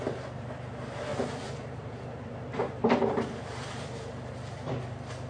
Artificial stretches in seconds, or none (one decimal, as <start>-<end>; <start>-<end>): 1.1-4.3